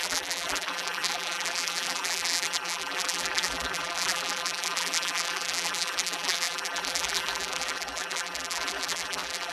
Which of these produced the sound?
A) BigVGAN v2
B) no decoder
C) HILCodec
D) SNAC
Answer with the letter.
A